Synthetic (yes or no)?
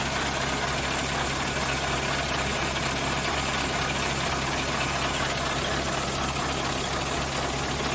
no